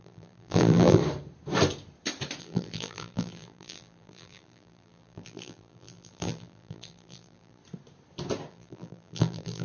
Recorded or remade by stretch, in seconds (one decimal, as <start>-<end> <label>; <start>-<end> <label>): 0.0-1.0 remade; 1.0-2.4 recorded; 2.4-7.6 remade; 7.6-8.5 recorded; 8.5-9.6 remade